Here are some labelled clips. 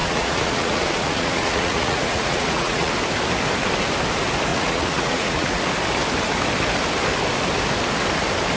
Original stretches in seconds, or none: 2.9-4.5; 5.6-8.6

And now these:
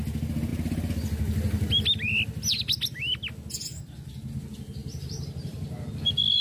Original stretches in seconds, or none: 0.0-4.8; 5.9-6.4

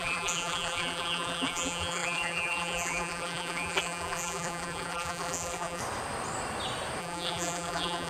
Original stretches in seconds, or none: 5.8-7.0

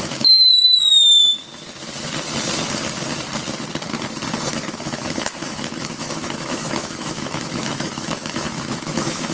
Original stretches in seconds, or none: 1.2-4.5

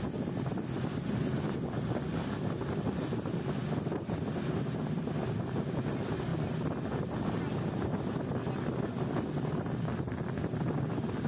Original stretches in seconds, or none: 0.0-11.3